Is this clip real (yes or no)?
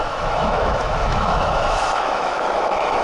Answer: no